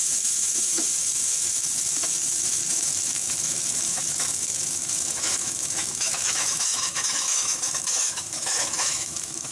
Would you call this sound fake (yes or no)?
yes